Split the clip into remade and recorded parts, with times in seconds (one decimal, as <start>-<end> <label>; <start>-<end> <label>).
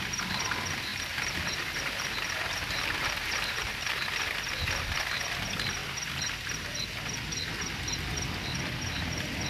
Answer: 0.0-0.9 recorded; 0.9-4.1 remade; 4.1-9.5 recorded